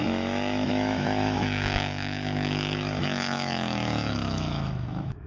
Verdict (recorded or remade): remade